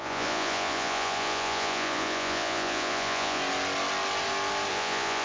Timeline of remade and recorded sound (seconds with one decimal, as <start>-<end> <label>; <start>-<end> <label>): 0.0-3.4 remade; 3.4-4.7 recorded; 4.7-5.2 remade